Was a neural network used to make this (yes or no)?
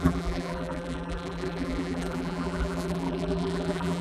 yes